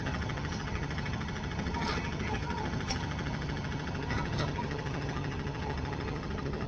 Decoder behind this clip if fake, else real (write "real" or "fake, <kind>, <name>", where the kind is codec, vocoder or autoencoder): fake, vocoder, HiFi-GAN